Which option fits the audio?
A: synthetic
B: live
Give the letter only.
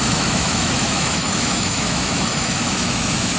A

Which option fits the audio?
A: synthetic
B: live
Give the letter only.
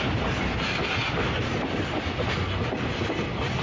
B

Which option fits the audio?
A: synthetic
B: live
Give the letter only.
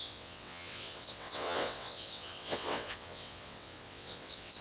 A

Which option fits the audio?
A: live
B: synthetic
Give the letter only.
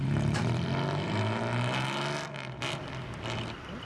A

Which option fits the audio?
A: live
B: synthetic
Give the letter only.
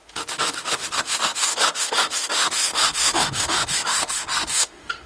B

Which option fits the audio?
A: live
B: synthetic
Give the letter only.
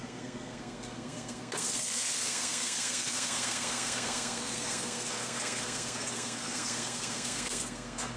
B